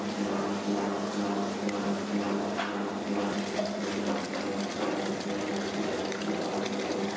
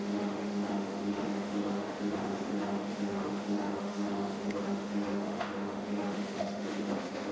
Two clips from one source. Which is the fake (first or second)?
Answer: second